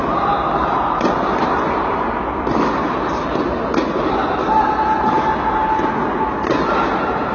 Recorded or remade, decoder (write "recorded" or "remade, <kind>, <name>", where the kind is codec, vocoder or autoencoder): recorded